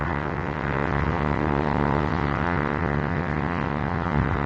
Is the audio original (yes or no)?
no